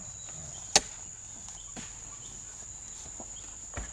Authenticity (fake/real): real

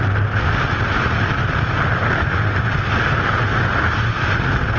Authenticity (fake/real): real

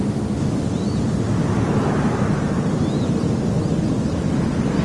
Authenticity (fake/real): real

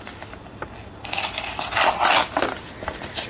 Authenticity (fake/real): real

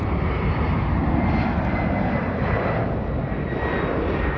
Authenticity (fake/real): real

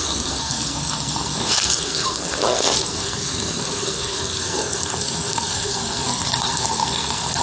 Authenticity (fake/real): fake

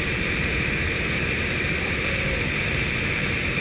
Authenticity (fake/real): fake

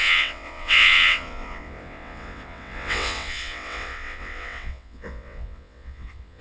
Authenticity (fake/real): fake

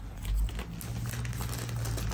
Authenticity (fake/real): real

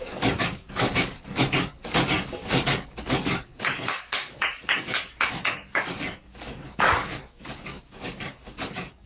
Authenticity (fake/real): fake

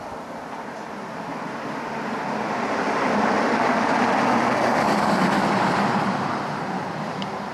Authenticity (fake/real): fake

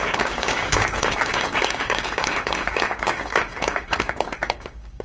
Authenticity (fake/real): fake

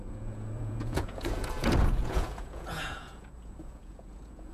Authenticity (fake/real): fake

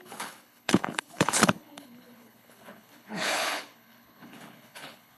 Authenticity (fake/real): fake